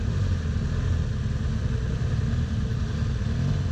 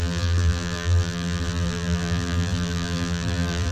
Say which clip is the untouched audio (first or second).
first